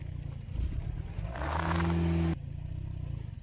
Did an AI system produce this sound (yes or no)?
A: no